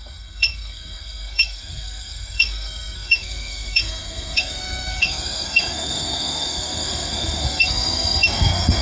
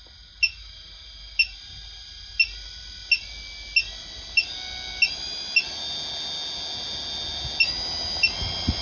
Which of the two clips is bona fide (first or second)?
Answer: second